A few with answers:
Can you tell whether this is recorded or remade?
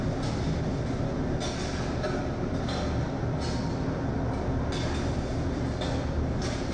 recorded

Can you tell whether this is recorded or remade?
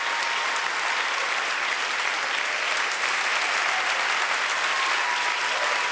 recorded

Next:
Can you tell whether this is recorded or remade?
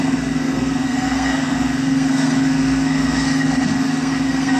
remade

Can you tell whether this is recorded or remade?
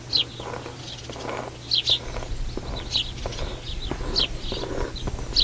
recorded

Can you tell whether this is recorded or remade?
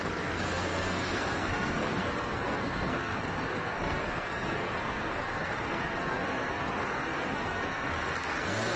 remade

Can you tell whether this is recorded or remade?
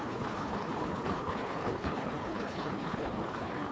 remade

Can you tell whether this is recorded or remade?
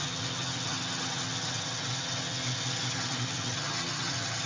remade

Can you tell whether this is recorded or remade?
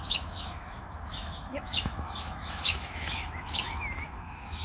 remade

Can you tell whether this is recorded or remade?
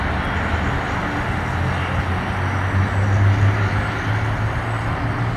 recorded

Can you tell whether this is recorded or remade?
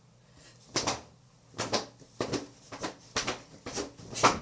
recorded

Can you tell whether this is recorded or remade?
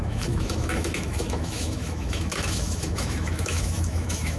remade